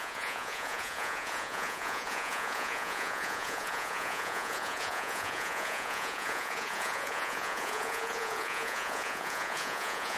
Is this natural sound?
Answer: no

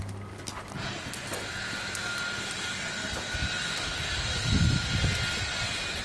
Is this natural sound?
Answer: yes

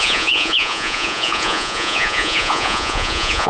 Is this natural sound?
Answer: no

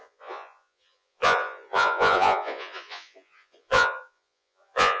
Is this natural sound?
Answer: no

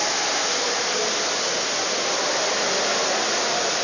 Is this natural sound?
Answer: yes